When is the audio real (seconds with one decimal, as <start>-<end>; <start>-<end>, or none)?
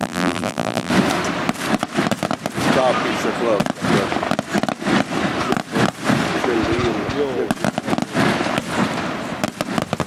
0.9-10.1